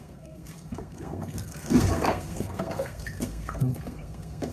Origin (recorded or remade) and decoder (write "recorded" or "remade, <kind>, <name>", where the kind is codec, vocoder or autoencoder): remade, codec, SNAC